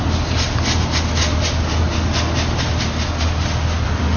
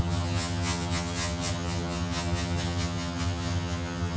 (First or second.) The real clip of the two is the first